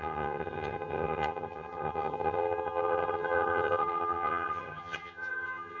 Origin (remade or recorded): remade